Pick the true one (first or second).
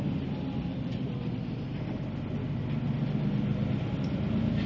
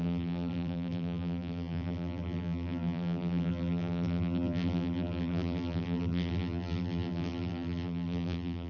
first